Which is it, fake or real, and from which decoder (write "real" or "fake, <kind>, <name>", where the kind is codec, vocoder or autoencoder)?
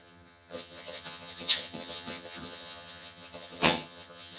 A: fake, vocoder, HiFi-GAN